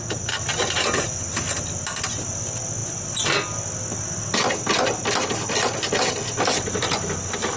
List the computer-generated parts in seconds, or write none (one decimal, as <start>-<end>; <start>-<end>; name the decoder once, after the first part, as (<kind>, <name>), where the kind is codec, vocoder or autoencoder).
none